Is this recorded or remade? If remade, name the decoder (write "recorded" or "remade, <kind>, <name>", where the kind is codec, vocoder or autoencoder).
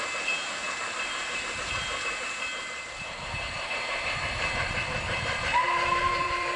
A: remade, vocoder, BigVGAN v2